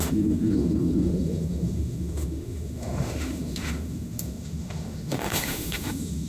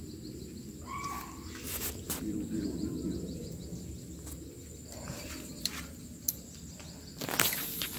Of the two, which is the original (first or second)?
second